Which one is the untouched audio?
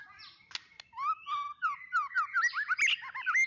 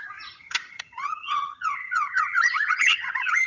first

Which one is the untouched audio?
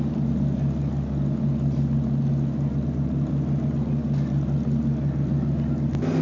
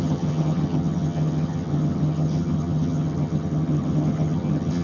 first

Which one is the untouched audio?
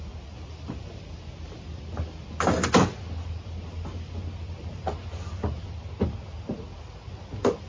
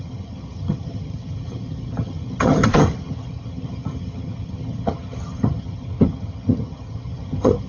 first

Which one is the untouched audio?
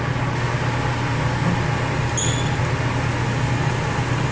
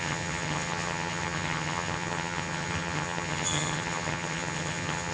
first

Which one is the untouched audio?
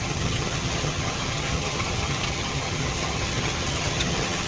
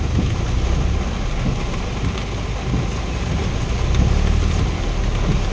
second